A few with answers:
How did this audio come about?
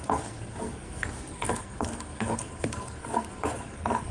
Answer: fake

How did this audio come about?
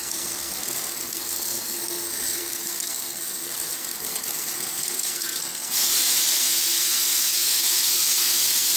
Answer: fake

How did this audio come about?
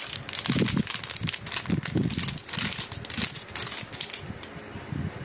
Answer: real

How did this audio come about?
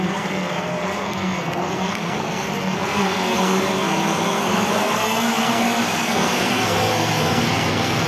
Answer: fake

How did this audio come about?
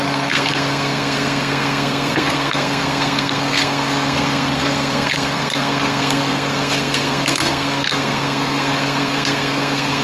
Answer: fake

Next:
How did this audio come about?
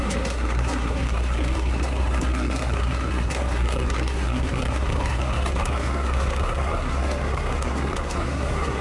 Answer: fake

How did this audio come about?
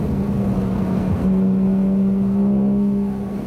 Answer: fake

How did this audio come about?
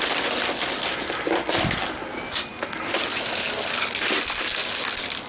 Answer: real